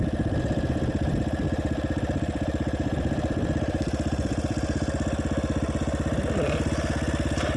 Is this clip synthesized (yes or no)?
yes